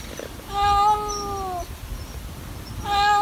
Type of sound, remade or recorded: recorded